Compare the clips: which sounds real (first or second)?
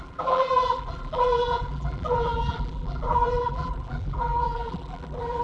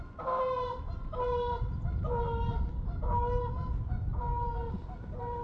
second